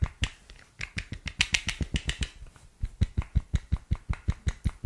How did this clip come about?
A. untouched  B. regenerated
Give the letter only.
A